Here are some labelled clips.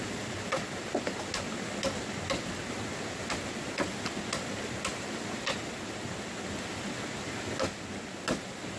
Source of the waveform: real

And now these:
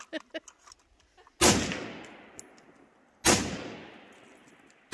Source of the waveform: real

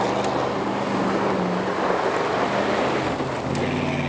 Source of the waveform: real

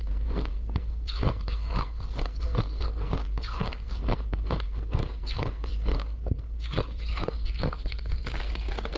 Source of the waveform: fake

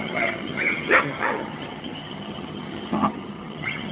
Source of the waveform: fake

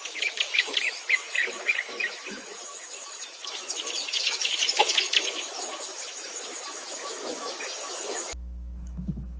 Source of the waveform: fake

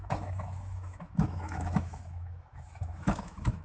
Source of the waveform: fake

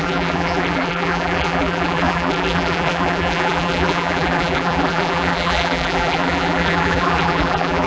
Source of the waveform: fake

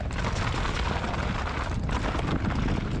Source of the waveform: real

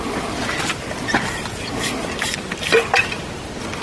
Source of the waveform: real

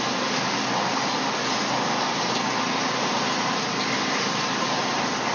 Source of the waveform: real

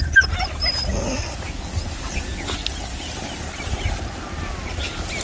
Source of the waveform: real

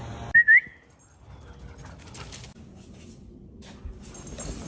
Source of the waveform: real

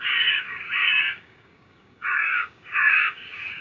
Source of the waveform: fake